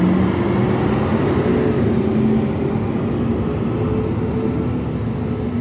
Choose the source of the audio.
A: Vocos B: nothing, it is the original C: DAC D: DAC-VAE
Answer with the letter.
B